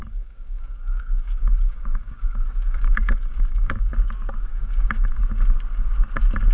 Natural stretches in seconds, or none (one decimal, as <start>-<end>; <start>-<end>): 3.9-4.5; 5.2-6.5